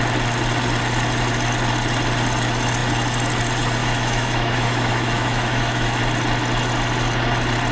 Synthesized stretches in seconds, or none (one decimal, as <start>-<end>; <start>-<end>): 3.8-6.0